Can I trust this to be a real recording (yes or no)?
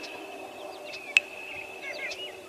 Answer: yes